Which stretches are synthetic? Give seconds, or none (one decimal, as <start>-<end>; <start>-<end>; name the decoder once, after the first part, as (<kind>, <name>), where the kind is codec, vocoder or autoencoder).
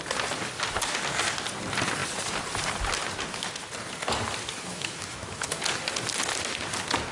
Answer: 4.7-5.6 (autoencoder, DAC-VAE)